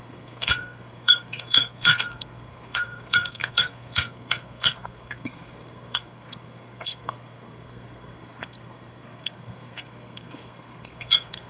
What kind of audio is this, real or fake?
fake